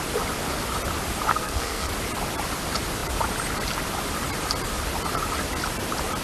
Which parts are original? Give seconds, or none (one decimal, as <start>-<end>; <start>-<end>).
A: 0.0-1.3; 1.9-6.2